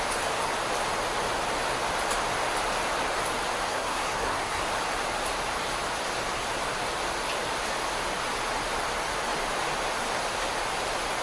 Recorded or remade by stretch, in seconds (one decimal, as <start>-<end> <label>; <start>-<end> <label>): 0.0-3.7 recorded; 3.7-4.6 remade; 4.6-11.2 recorded